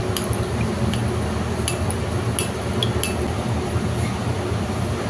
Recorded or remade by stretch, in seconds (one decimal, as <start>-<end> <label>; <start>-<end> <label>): 0.0-5.1 recorded